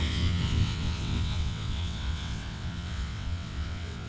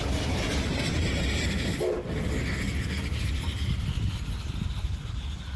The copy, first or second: first